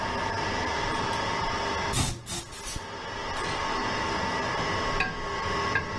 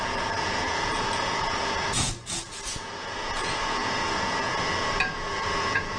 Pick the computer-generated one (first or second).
second